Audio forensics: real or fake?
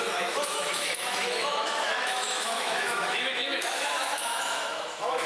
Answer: fake